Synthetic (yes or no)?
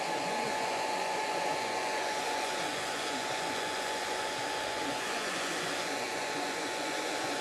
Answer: yes